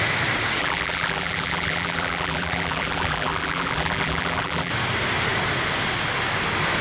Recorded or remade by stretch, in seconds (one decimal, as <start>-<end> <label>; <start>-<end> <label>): 0.0-0.6 recorded; 0.6-4.7 remade; 4.7-6.8 recorded